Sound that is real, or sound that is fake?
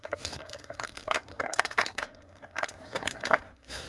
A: fake